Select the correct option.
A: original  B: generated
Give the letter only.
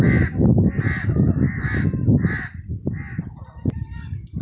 A